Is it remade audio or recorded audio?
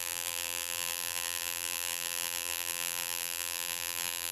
remade